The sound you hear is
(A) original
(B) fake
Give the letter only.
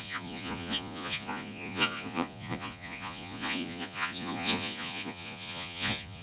B